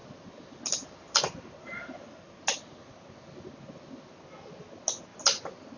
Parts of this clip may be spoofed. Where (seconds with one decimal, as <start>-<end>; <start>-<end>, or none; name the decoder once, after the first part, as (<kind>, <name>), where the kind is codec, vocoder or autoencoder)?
0.0-1.2 (vocoder, BigVGAN v2)